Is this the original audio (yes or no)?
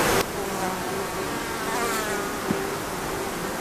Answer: yes